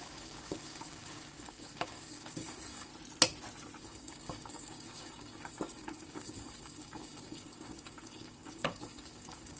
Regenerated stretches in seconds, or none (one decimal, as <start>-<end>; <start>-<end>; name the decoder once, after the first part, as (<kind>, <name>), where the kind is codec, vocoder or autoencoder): 0.0-2.9 (codec, DAC); 3.8-9.6